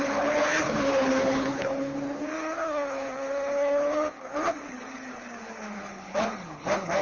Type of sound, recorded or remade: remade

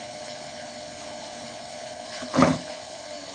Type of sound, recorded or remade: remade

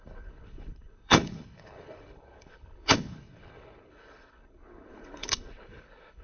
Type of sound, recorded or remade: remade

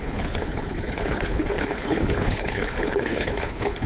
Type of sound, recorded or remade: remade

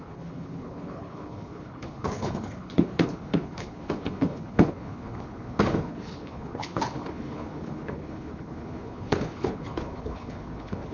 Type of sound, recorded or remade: remade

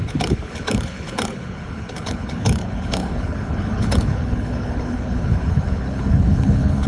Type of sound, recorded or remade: remade